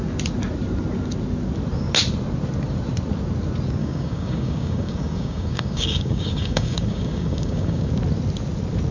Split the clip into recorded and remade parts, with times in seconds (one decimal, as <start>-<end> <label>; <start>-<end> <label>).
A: 0.0-3.8 recorded; 3.8-7.9 remade; 7.9-8.9 recorded